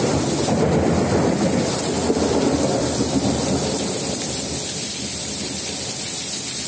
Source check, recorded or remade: recorded